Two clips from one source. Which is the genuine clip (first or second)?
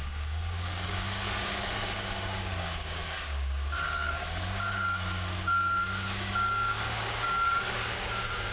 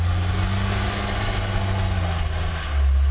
second